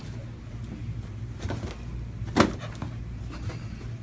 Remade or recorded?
recorded